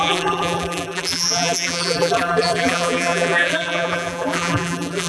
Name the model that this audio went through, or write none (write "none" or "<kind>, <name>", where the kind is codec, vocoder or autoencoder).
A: vocoder, BigVGAN v2